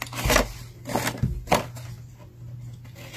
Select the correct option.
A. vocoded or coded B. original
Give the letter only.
B